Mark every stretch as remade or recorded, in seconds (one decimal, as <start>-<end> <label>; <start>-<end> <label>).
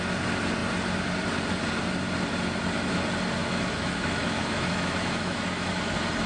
0.0-3.4 recorded; 3.4-5.7 remade; 5.7-6.3 recorded